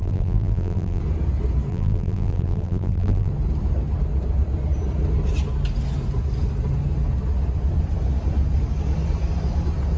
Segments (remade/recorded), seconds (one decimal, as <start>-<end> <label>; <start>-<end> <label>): 0.0-1.0 remade; 1.0-1.7 recorded; 1.7-3.3 remade; 3.3-10.0 recorded